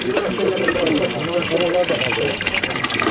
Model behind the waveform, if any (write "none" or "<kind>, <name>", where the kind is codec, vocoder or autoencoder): vocoder, BigVGAN v2